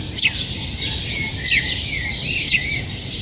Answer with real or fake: real